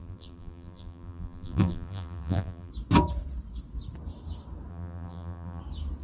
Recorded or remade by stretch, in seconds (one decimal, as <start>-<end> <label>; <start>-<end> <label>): 0.0-2.7 remade; 2.7-4.7 recorded; 4.7-5.6 remade; 5.6-6.0 recorded